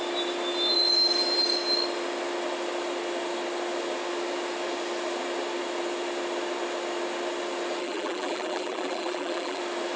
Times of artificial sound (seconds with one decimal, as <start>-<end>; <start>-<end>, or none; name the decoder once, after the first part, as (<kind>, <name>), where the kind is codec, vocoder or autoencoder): 7.8-9.6 (vocoder, BigVGAN v2)